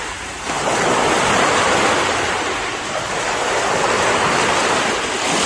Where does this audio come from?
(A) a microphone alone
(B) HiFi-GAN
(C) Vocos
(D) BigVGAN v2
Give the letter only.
A